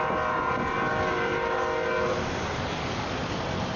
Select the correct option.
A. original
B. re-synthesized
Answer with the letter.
A